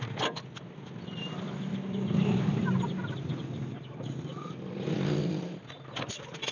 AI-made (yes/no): no